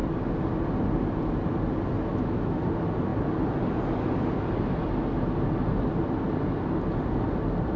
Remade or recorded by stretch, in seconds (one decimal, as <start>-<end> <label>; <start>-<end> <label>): 0.0-2.1 recorded; 2.1-2.6 remade; 2.6-7.8 recorded